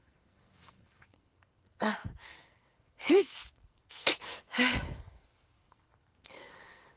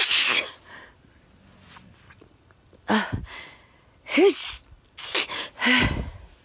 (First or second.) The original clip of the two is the second